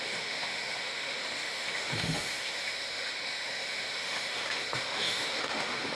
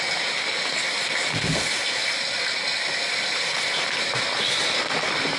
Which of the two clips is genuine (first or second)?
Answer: second